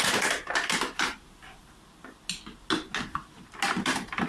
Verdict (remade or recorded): recorded